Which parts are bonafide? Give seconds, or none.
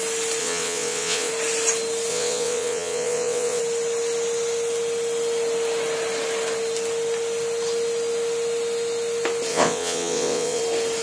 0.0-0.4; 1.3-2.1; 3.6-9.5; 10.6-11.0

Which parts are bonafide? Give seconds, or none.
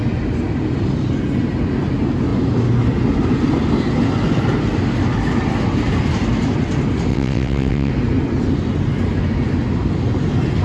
0.0-7.1; 7.9-10.6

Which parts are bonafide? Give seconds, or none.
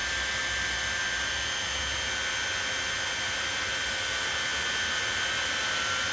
0.0-6.1